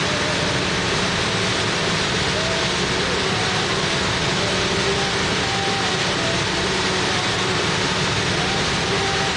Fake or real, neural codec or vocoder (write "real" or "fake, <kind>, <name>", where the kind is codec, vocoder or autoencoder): real